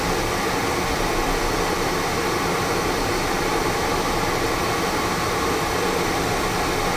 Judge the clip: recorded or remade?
recorded